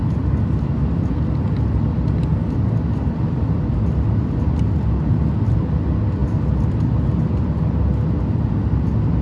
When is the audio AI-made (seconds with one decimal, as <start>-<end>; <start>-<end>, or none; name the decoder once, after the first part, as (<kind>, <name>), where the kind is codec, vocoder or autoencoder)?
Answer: none

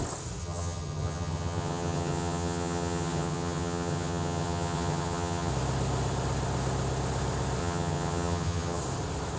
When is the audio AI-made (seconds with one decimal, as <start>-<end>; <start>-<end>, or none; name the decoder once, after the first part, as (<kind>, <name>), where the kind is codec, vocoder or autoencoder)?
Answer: 0.4-5.5 (vocoder, HiFi-GAN); 7.6-8.8

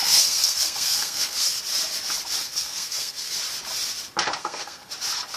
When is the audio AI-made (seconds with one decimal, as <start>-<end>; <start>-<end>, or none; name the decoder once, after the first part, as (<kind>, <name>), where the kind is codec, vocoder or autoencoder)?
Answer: 0.0-1.6 (codec, SNAC); 2.4-3.3; 4.4-4.9

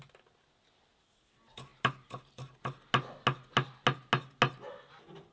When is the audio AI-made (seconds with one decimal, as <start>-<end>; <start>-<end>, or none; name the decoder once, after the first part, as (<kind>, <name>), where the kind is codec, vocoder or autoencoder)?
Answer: none

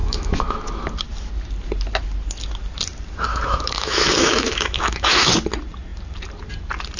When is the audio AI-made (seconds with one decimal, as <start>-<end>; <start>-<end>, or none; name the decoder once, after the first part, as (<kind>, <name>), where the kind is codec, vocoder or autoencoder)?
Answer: 0.0-0.7 (autoencoder, DAC-VAE); 3.3-5.3

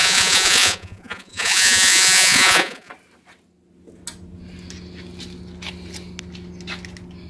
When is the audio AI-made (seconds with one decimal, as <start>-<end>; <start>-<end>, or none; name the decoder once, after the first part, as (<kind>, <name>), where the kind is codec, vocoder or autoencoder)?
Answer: 0.0-2.9 (vocoder, Vocos)

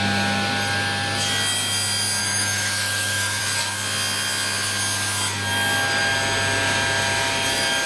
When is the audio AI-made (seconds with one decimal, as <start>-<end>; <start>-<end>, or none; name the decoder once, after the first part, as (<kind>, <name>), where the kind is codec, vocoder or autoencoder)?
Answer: 2.2-3.4 (autoencoder, DAC-VAE)

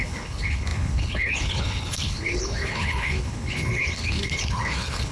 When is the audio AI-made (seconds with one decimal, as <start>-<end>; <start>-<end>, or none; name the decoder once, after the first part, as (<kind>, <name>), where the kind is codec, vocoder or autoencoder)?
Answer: 0.0-5.1 (codec, HILCodec)